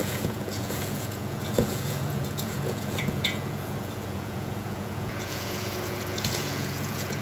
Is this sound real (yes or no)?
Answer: no